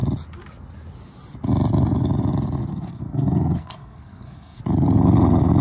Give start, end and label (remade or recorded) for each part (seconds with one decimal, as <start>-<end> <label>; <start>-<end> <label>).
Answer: 0.0-2.7 recorded; 2.7-4.6 remade; 4.6-5.6 recorded